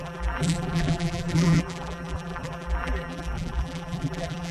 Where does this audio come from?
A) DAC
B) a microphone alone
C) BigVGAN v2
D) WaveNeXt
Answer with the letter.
C